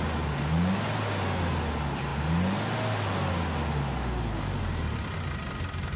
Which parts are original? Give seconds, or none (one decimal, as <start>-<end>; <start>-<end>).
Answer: 0.0-6.0